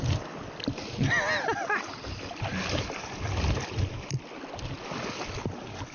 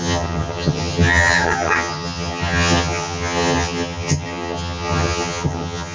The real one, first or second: first